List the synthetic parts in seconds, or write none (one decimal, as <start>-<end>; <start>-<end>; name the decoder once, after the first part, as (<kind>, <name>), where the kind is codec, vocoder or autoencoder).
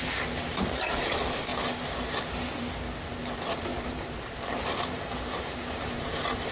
0.0-1.5 (vocoder, BigVGAN v2); 2.9-6.5